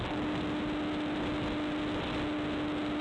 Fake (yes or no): no